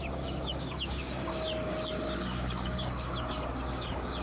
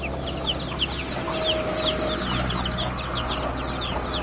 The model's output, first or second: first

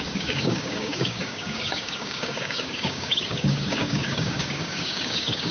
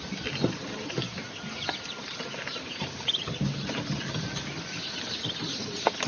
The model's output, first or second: first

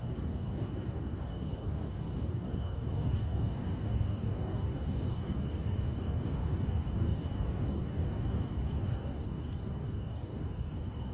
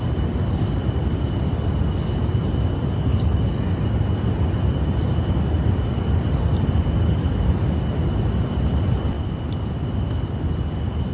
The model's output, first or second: first